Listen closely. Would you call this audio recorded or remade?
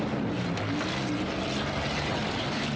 recorded